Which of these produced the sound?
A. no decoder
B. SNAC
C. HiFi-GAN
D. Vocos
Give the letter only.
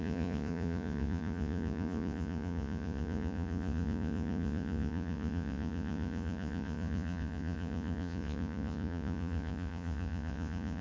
D